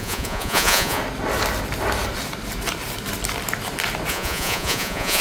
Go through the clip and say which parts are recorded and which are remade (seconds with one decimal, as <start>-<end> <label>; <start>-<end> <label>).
0.0-1.0 remade; 1.0-4.1 recorded; 4.1-5.2 remade